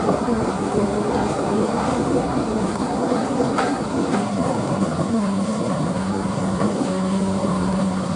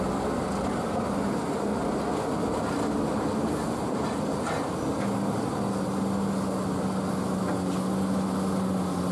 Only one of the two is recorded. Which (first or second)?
second